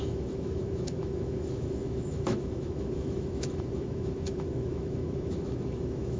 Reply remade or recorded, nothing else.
remade